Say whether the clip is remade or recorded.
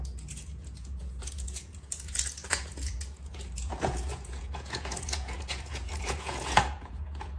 remade